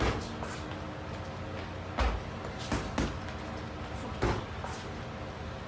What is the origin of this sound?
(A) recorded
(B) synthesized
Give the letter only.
A